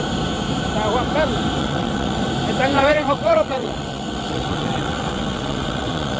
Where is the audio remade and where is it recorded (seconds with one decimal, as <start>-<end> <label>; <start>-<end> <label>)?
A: 0.0-1.6 recorded; 1.6-2.2 remade; 2.2-2.7 recorded; 2.7-6.2 remade